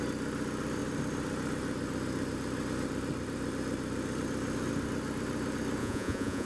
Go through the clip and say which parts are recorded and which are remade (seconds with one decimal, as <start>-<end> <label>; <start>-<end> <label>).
0.0-5.8 recorded; 5.8-6.5 remade

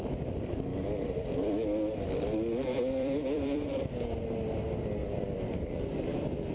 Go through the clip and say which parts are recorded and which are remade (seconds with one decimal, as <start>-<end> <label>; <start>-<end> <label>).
0.0-2.6 recorded; 2.6-3.9 remade; 3.9-5.0 recorded; 5.0-6.1 remade; 6.1-6.5 recorded

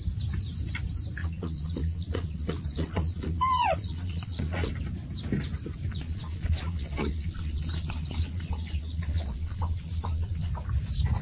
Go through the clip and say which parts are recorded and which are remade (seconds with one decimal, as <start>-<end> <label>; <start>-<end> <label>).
0.0-1.2 recorded; 1.2-4.7 remade; 4.7-5.9 recorded; 5.9-10.5 remade; 10.5-11.2 recorded

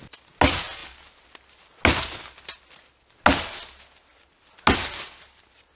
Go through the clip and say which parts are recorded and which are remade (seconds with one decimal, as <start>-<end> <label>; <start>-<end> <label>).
0.0-5.8 recorded

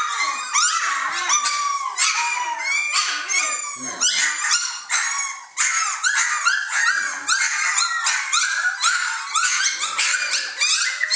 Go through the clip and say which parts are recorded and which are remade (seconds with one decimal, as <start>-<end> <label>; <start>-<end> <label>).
0.0-11.2 recorded

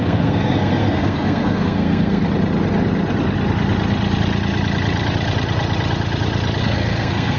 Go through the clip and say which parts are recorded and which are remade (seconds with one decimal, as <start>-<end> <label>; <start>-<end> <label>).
0.0-2.2 remade; 2.2-6.6 recorded; 6.6-7.4 remade

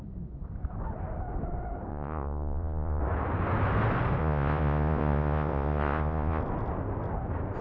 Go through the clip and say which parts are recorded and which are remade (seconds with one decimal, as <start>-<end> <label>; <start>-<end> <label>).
0.0-1.9 recorded; 1.9-3.0 remade; 3.0-4.2 recorded; 4.2-6.4 remade; 6.4-7.6 recorded